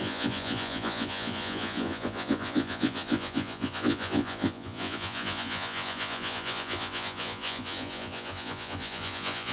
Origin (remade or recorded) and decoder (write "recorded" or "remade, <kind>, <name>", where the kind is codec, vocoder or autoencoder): remade, vocoder, Vocos